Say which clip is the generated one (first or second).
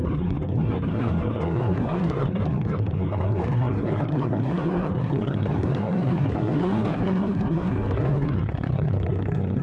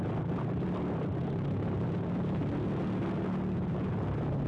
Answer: first